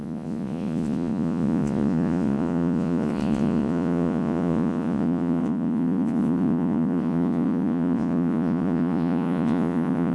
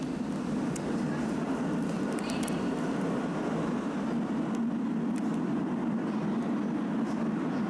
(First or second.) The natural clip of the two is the second